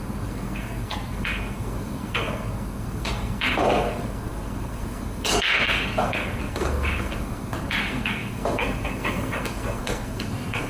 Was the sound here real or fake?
fake